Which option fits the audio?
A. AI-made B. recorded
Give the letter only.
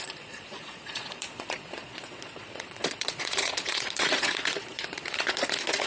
A